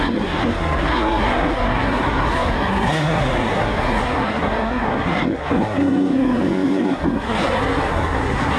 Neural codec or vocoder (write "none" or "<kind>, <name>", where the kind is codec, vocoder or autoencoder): codec, SNAC